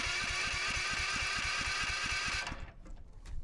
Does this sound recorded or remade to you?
recorded